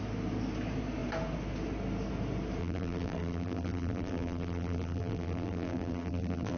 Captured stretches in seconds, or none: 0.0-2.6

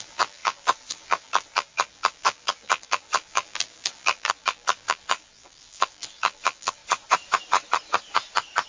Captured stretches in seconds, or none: 6.8-8.7

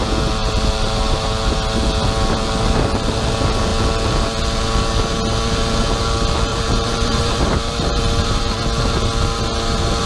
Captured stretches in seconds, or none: 0.0-0.4; 1.5-6.5; 8.4-10.1

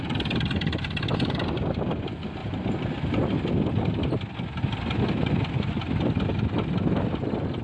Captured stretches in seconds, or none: 0.0-7.6

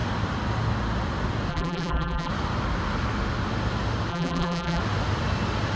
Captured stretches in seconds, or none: 0.0-1.5; 2.3-4.1; 4.8-5.8

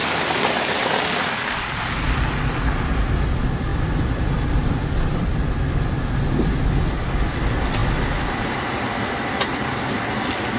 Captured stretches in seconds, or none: 2.0-3.7; 5.4-7.8; 8.5-10.6